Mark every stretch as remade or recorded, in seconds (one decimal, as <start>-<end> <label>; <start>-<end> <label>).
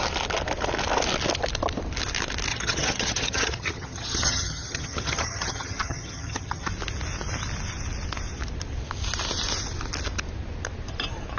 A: 0.0-2.5 recorded; 2.5-6.7 remade; 6.7-11.4 recorded